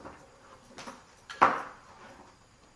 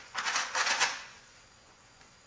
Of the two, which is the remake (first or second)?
second